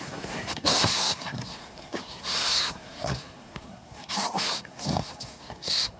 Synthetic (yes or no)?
yes